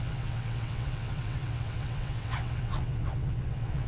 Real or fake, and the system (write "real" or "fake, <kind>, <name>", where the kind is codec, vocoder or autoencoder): fake, vocoder, WaveNeXt